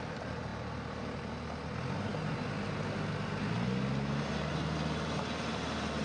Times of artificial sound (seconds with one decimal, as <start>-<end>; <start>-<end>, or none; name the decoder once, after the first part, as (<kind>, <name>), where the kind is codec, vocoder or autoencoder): none